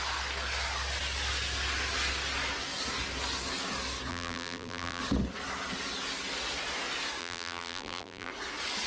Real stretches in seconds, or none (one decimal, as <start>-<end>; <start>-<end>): 0.0-4.1; 5.0-7.2; 8.3-8.9